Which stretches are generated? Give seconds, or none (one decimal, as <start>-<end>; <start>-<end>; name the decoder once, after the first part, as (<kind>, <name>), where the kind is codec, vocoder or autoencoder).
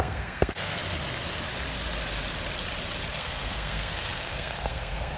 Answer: 0.0-0.8 (codec, SNAC); 3.1-5.2